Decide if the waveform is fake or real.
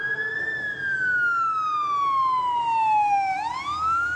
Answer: real